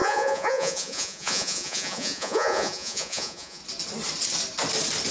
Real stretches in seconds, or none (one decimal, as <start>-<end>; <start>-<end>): 3.6-5.1